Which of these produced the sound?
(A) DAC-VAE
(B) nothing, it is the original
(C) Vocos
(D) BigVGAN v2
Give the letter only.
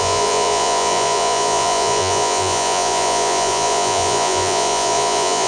C